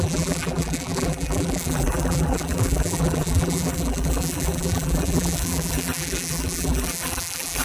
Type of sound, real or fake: fake